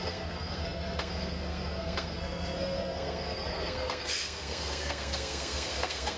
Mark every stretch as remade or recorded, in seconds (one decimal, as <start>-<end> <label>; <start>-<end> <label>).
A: 0.0-6.2 remade